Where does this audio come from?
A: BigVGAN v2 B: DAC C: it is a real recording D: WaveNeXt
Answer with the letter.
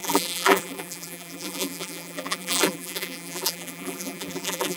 A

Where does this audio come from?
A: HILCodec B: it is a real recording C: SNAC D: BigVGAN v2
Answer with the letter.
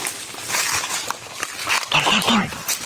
B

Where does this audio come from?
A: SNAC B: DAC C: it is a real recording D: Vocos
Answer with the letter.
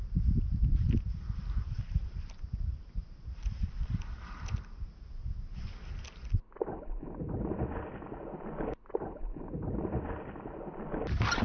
C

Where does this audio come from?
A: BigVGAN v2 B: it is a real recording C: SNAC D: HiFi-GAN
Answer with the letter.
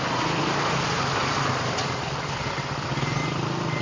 B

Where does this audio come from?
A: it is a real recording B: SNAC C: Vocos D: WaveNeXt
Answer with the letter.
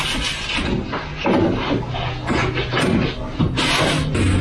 A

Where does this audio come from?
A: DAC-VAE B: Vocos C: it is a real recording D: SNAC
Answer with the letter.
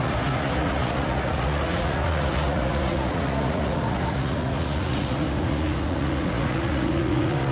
B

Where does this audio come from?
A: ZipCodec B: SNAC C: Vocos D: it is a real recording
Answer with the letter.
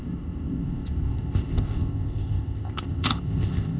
A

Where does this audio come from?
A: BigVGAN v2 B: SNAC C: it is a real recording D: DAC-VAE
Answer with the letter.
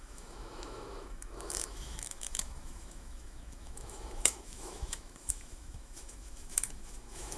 D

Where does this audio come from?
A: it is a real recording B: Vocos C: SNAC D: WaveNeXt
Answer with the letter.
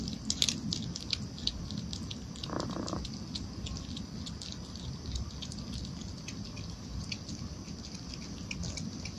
A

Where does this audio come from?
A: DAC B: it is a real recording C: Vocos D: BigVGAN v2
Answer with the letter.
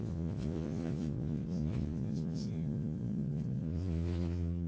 C